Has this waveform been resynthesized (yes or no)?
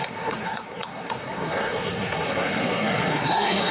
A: yes